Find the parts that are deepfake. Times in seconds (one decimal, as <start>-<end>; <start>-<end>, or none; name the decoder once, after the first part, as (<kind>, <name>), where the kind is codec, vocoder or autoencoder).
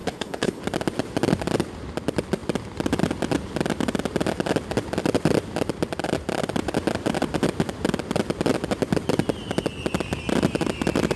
0.0-0.6 (codec, HILCodec)